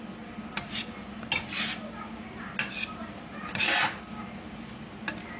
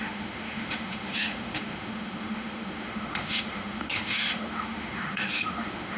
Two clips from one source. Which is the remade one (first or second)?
second